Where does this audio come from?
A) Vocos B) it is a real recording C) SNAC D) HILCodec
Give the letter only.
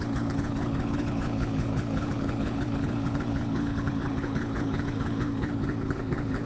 D